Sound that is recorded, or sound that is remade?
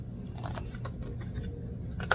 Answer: recorded